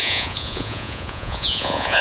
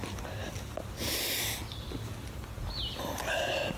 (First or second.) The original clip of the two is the second